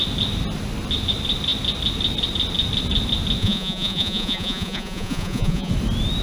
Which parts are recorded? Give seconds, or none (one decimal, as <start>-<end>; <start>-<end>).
0.0-3.4; 5.7-6.2